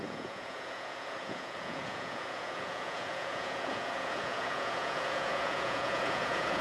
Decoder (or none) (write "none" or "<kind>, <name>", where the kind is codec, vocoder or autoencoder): vocoder, Vocos